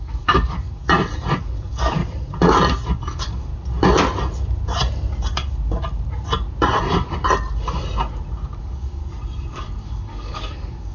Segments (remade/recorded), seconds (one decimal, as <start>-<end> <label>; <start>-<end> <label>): 0.0-0.8 remade; 0.8-1.4 recorded; 1.4-2.0 remade; 2.0-3.0 recorded; 3.0-3.5 remade; 3.5-8.6 recorded; 8.6-9.0 remade; 9.0-9.5 recorded; 9.5-10.9 remade